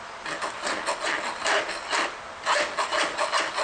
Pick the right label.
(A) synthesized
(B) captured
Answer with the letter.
B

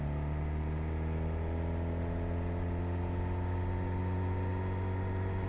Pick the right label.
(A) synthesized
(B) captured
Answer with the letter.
B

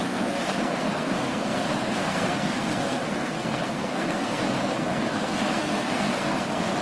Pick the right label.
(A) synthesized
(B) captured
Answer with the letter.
A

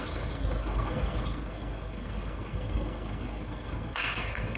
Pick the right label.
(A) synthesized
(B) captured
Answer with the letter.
A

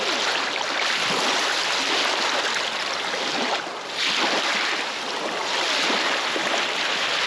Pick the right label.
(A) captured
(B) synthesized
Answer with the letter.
A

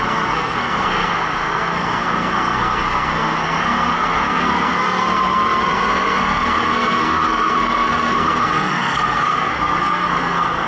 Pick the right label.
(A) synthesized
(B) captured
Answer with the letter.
A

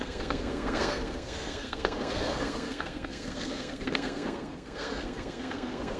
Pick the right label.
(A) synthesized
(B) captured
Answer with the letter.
A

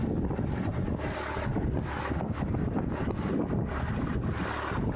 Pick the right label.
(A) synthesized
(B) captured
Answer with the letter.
B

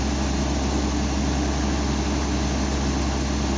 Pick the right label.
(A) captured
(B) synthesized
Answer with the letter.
A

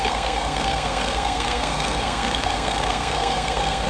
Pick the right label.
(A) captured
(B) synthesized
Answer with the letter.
B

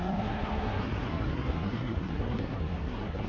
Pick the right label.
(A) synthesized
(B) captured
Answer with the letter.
A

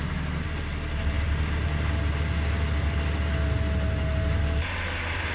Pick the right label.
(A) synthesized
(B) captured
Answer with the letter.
B